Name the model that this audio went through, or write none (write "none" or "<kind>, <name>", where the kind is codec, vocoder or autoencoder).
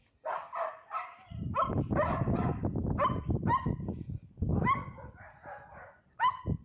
none